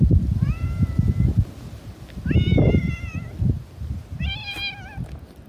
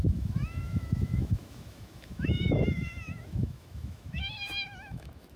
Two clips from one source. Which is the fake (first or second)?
second